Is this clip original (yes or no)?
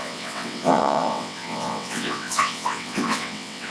no